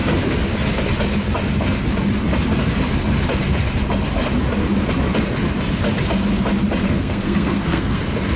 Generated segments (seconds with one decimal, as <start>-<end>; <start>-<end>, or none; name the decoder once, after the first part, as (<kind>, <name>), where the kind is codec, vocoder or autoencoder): 6.8-8.0 (codec, SNAC)